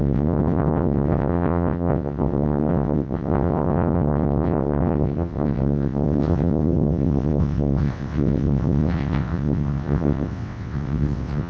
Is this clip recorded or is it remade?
remade